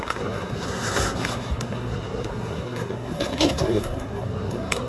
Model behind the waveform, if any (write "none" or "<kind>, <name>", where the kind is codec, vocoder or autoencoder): codec, SNAC